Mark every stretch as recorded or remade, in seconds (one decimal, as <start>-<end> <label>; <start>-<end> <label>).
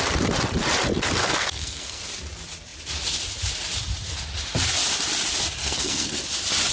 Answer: 0.0-1.2 recorded; 1.2-2.0 remade; 2.0-5.6 recorded; 5.6-6.2 remade; 6.2-6.7 recorded